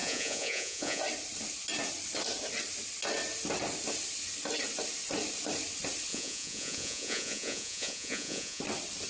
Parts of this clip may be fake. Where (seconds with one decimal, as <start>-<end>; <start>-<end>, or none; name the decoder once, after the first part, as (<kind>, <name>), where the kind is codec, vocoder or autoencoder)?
0.0-1.0 (vocoder, Vocos); 6.1-8.6